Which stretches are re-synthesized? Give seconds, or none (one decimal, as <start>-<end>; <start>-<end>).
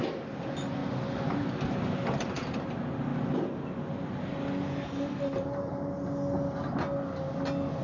none